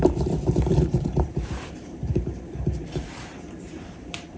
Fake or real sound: fake